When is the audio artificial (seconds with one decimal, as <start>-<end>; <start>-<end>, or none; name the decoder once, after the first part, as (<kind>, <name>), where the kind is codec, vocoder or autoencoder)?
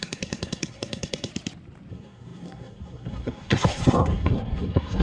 0.0-1.3 (codec, SNAC); 1.9-5.0